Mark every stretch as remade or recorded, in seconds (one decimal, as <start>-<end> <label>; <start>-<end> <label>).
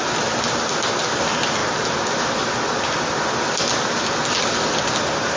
0.0-5.4 recorded